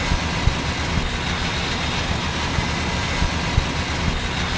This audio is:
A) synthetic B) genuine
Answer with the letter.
B